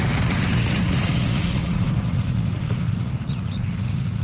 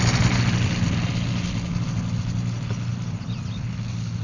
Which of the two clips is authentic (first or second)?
second